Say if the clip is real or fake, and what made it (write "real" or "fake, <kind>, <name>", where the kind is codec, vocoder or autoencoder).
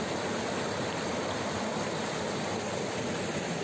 real